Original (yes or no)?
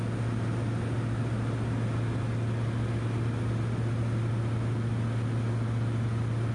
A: yes